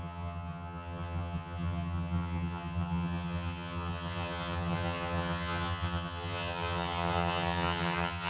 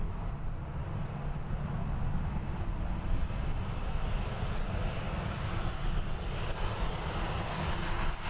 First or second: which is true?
second